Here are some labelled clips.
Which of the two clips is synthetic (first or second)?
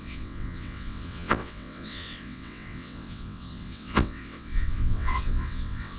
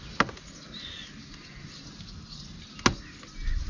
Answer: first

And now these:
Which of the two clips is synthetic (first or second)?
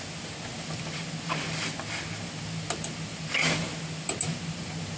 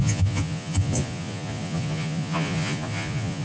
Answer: second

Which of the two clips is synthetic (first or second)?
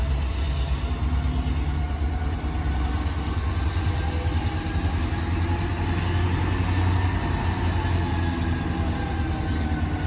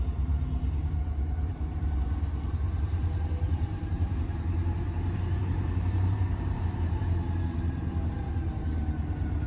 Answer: second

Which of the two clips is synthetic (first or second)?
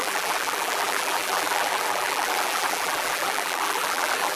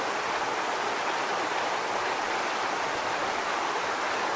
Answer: first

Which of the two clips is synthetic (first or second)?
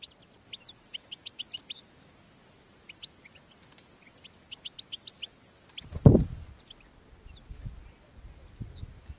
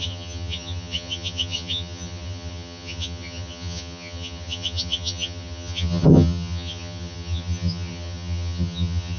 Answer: second